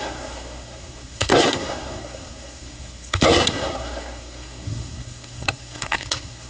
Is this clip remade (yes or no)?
yes